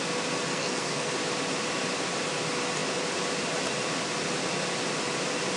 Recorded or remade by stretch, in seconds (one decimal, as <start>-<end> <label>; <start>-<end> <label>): 0.0-0.5 recorded; 0.5-1.1 remade; 1.1-5.6 recorded

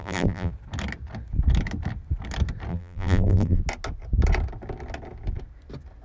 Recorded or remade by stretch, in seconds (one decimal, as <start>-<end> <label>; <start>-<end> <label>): 0.0-0.5 remade; 0.5-2.7 recorded; 2.7-3.6 remade; 3.6-6.0 recorded

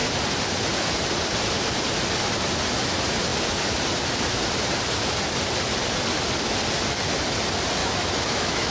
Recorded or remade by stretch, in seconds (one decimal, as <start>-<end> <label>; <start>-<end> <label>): 0.0-7.8 recorded; 7.8-8.7 remade

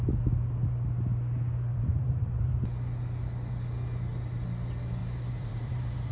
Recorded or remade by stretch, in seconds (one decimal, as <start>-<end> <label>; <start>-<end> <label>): 0.0-1.7 recorded; 1.7-2.6 remade; 2.6-5.0 recorded; 5.0-6.1 remade

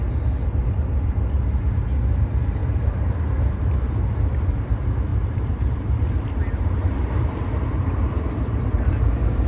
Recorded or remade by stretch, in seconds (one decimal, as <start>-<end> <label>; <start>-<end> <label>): 0.0-2.6 recorded; 2.6-3.9 remade; 3.9-5.1 recorded; 5.1-9.5 remade

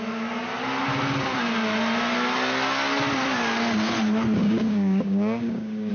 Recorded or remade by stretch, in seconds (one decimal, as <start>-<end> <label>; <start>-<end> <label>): 0.0-4.4 recorded; 4.4-5.9 remade